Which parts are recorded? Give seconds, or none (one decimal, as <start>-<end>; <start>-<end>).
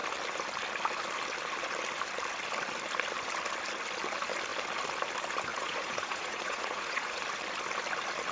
0.0-5.5; 7.2-8.3